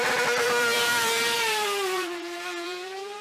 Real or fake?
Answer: fake